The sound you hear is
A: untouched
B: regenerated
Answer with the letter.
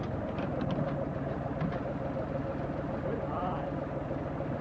A